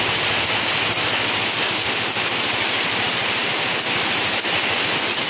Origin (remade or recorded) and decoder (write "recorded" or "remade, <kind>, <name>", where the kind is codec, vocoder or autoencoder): recorded